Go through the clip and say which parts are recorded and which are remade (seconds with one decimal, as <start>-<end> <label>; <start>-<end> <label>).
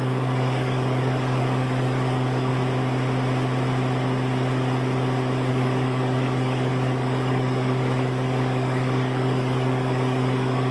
0.0-2.5 remade; 2.5-5.5 recorded; 5.5-10.7 remade